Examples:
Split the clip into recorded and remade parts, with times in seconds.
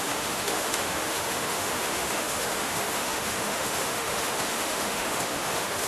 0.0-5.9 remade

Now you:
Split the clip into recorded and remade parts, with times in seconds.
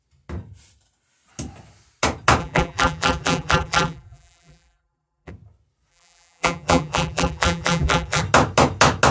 0.0-2.4 recorded; 2.4-5.3 remade; 5.3-5.9 recorded; 5.9-8.2 remade; 8.2-9.1 recorded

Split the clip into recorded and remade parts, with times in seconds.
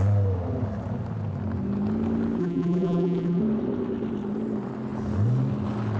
0.0-2.4 recorded; 2.4-3.4 remade; 3.4-6.0 recorded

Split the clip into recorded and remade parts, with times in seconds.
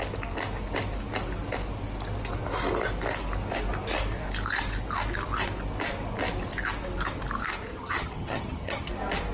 0.0-7.7 recorded; 7.7-8.9 remade; 8.9-9.3 recorded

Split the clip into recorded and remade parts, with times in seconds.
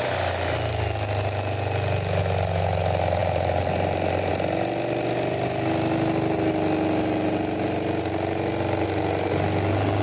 0.0-3.2 recorded; 3.2-4.3 remade; 4.3-10.0 recorded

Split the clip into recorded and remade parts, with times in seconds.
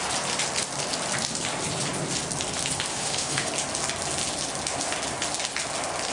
0.0-2.9 recorded; 2.9-3.5 remade; 3.5-6.1 recorded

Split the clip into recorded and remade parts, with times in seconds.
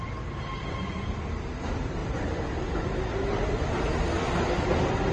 0.0-2.0 recorded; 2.0-2.8 remade; 2.8-5.1 recorded